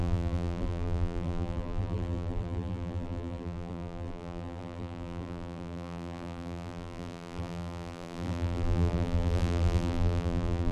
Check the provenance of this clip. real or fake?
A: fake